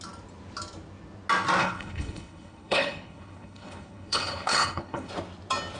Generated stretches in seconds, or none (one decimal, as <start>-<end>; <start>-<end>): 1.6-5.1